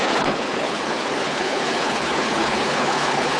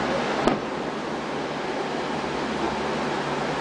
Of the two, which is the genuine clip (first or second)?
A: second